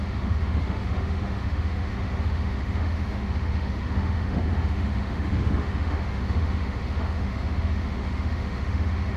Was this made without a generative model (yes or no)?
no